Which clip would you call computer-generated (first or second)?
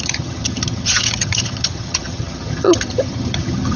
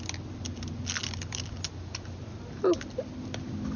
first